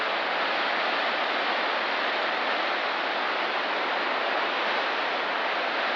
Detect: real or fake real